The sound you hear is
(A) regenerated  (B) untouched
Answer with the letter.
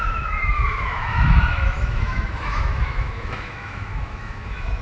A